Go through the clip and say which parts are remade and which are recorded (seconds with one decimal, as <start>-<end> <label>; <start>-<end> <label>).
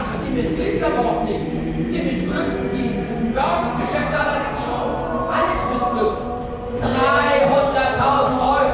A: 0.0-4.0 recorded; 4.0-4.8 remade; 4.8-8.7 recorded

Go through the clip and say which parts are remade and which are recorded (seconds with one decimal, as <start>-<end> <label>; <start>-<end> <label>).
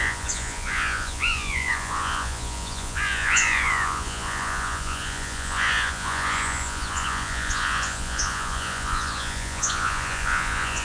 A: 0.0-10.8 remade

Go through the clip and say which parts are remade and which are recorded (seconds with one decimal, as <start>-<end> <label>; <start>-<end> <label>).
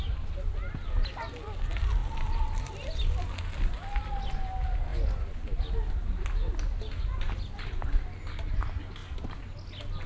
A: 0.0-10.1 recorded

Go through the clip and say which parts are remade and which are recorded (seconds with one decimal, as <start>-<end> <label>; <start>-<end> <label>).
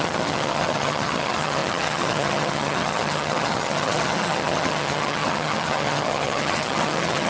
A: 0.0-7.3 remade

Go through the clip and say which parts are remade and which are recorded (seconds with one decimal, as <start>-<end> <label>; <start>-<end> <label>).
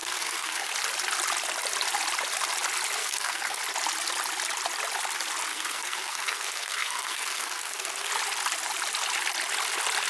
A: 0.0-0.7 remade; 0.7-3.0 recorded; 3.0-3.6 remade; 3.6-5.5 recorded; 5.5-8.1 remade; 8.1-10.1 recorded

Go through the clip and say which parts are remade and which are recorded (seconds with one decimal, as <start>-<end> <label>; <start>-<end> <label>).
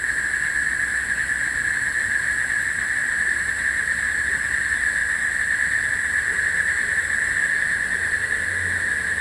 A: 0.0-3.0 recorded; 3.0-4.3 remade; 4.3-9.2 recorded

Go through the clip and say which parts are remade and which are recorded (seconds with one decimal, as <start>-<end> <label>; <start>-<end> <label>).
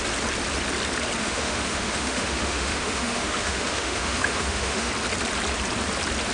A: 0.0-1.2 recorded; 1.2-4.9 remade; 4.9-6.3 recorded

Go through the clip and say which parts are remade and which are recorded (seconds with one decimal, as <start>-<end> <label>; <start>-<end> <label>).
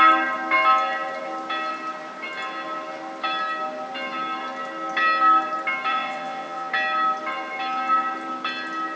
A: 0.0-5.9 recorded; 5.9-6.7 remade; 6.7-9.0 recorded